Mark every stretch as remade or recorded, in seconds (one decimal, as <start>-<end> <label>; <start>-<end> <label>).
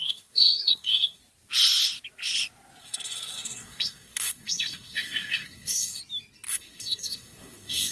0.0-1.2 remade; 1.2-2.8 recorded; 2.8-6.0 remade; 6.0-6.5 recorded; 6.5-7.9 remade